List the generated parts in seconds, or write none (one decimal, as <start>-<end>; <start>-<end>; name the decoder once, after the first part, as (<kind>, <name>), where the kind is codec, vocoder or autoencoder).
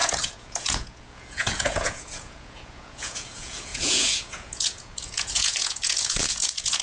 0.0-6.8 (vocoder, Vocos)